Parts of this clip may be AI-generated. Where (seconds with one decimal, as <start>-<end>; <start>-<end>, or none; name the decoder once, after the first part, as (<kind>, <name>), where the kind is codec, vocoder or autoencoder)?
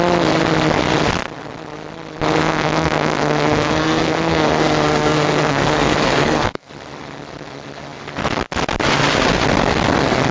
2.4-6.7 (codec, SNAC)